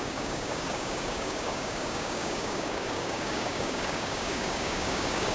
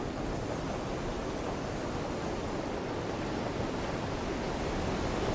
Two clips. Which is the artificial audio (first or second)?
first